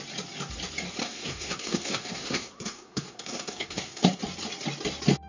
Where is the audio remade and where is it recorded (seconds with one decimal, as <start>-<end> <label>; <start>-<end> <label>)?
0.0-1.0 recorded; 1.0-4.2 remade; 4.2-5.3 recorded